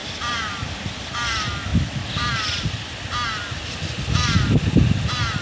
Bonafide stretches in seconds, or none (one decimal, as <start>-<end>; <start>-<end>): 0.0-5.4